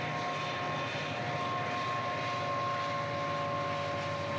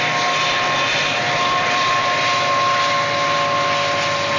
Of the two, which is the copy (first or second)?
second